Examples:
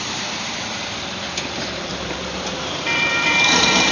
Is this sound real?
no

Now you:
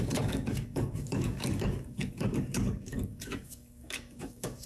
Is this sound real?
no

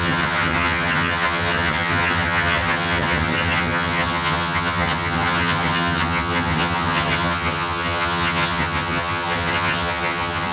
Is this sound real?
no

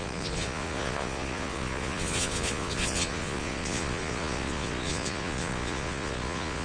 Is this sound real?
no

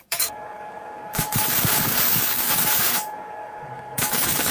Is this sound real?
no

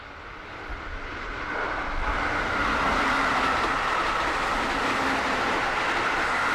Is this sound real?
yes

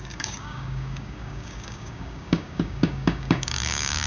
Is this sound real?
no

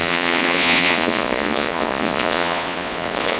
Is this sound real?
no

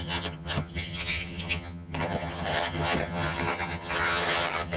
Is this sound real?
no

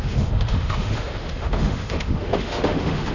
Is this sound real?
no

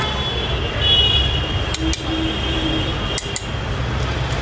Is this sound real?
yes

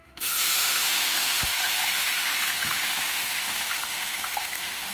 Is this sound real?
no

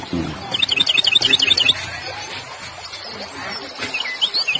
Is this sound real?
yes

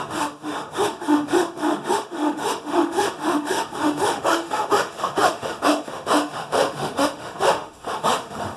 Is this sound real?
no